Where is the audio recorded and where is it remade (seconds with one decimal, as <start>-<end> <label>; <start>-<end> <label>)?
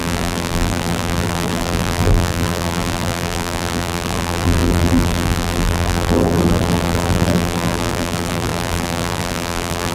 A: 0.0-9.9 remade